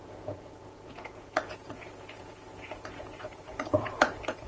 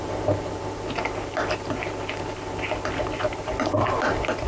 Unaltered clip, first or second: second